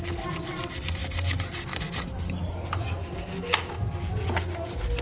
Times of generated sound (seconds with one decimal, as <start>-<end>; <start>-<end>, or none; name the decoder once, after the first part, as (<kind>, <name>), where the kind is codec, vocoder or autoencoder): 3.0-3.8 (codec, DAC)